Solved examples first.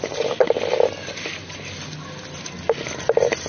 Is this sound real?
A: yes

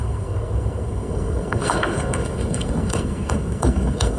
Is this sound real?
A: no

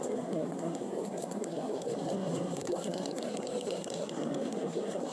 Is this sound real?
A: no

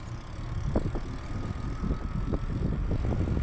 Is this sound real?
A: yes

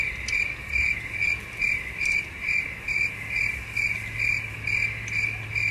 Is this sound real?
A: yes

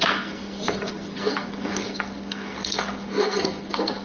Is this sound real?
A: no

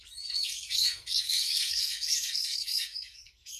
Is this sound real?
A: no